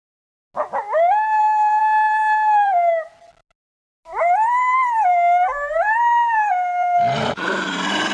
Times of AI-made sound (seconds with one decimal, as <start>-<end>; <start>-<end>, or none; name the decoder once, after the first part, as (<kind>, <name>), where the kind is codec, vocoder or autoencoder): 1.8-2.9 (vocoder, BigVGAN v2); 4.1-8.1